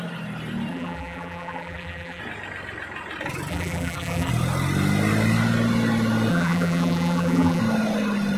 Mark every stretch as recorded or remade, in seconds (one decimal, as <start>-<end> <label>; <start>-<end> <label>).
0.0-0.7 recorded; 0.7-2.2 remade; 2.2-3.5 recorded; 3.5-4.3 remade; 4.3-6.3 recorded; 6.3-7.6 remade; 7.6-8.4 recorded